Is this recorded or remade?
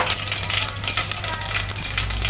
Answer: recorded